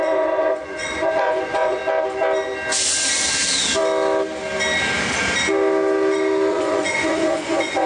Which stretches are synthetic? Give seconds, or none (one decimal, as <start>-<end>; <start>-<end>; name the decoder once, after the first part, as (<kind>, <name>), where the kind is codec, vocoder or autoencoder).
0.0-1.8 (vocoder, Vocos); 6.5-7.9